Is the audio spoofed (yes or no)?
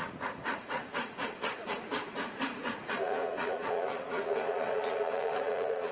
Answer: yes